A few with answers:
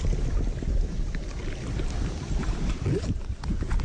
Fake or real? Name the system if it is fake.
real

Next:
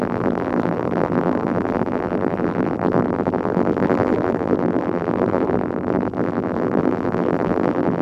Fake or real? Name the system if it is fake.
fake, vocoder, BigVGAN v2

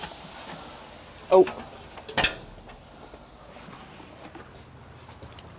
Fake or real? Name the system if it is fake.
real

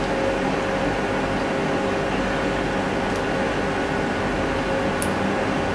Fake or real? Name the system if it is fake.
real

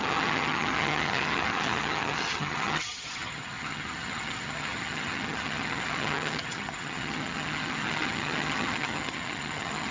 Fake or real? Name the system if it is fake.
fake, vocoder, HiFi-GAN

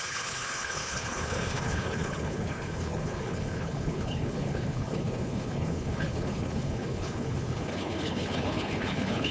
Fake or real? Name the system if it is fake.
fake, codec, HILCodec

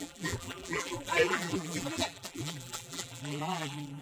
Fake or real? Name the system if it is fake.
fake, vocoder, BigVGAN v2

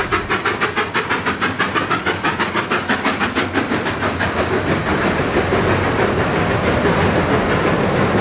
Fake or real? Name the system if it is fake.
real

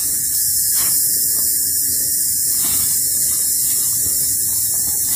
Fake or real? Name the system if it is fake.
fake, vocoder, Vocos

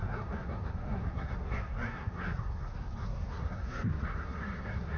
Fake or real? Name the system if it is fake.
fake, codec, SNAC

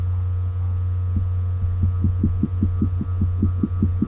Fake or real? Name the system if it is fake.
real